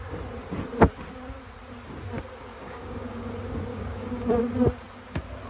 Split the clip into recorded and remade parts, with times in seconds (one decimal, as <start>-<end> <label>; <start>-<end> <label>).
0.0-2.5 recorded; 2.5-3.3 remade; 3.3-3.7 recorded; 3.7-4.4 remade; 4.4-5.5 recorded